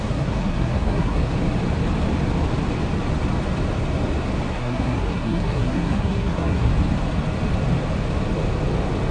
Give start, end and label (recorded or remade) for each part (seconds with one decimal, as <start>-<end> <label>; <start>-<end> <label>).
0.0-1.3 remade; 1.3-4.5 recorded; 4.5-6.7 remade; 6.7-9.1 recorded